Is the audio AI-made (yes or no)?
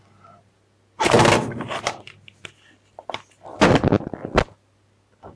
no